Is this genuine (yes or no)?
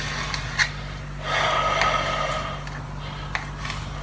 yes